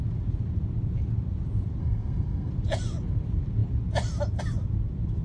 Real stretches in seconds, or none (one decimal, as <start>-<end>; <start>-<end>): 0.0-1.8; 2.5-5.2